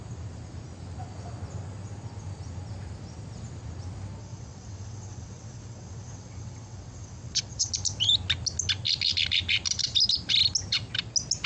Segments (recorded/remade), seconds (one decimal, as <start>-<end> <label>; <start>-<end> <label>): 0.0-4.2 recorded; 4.2-7.7 remade; 7.7-11.5 recorded